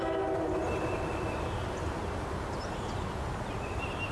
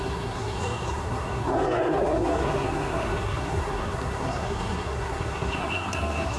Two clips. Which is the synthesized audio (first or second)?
second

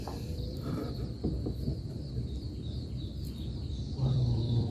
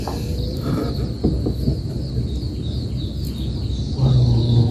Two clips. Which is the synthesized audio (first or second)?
first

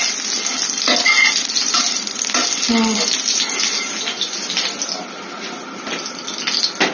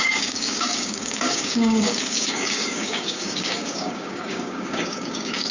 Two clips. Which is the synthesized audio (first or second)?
second